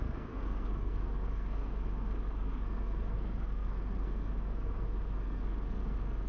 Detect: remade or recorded remade